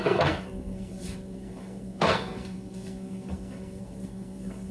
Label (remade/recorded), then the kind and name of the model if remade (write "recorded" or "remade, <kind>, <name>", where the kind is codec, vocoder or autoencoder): remade, codec, SNAC